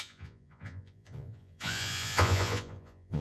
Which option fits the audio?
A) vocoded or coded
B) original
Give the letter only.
A